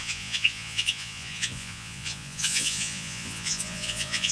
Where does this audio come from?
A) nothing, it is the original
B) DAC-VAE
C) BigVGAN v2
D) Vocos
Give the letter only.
D